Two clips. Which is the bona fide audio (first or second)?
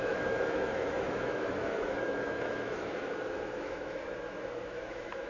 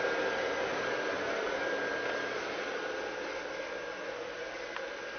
second